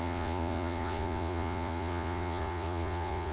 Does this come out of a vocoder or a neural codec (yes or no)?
yes